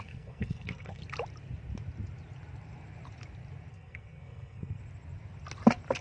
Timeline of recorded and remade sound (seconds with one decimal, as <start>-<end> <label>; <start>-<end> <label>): 0.0-1.0 remade; 1.0-3.7 recorded; 3.7-4.8 remade; 4.8-6.0 recorded